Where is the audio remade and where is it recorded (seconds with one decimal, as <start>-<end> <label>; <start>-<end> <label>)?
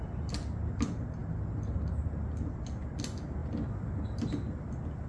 0.0-3.4 recorded; 3.4-4.0 remade; 4.0-5.1 recorded